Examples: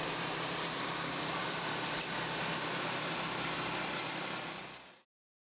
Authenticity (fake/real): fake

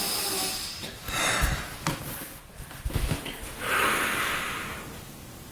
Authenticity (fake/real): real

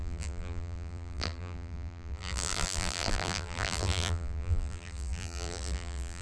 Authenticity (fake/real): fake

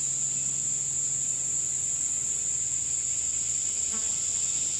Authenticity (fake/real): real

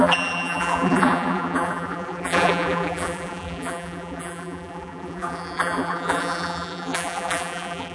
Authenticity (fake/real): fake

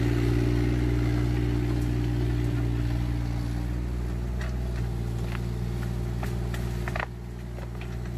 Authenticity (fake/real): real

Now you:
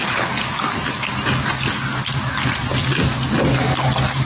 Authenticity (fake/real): real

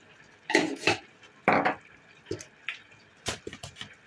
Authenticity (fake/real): fake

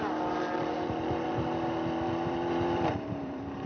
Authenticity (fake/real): fake